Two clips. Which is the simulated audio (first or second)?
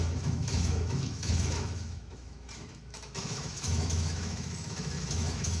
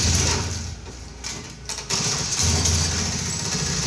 first